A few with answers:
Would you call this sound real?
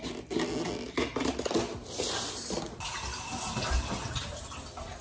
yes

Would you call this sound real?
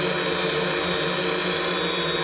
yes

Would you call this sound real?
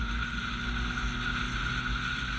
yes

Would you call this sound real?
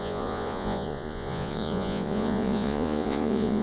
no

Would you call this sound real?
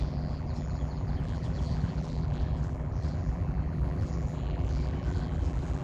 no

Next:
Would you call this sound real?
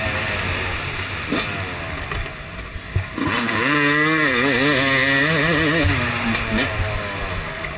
yes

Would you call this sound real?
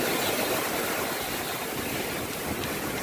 yes